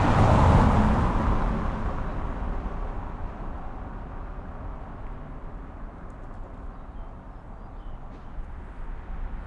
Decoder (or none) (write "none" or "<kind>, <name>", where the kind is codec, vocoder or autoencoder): none